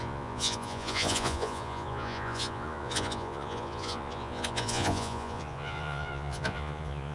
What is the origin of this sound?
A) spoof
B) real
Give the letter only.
A